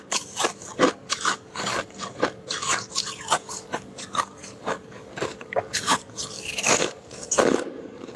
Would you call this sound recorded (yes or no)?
no